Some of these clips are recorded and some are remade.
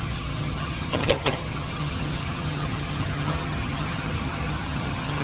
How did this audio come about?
remade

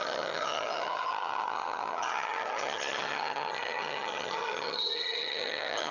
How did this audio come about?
remade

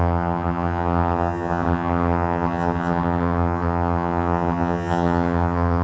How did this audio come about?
remade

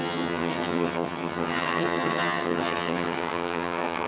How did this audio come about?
remade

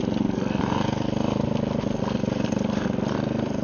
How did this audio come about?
recorded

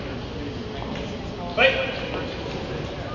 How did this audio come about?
recorded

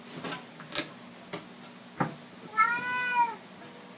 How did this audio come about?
recorded